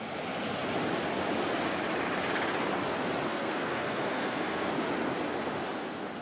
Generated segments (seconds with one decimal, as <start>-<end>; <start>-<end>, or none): 3.3-4.7